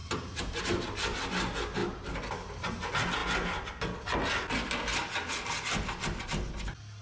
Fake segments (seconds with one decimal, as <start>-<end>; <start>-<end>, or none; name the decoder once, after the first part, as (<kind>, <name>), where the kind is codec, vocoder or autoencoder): 0.0-0.6 (vocoder, BigVGAN v2); 1.8-2.5